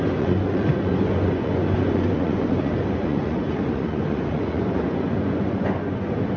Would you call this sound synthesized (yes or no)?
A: yes